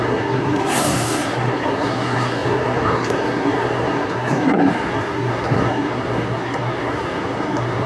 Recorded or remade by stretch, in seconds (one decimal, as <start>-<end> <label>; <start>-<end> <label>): 0.0-7.9 remade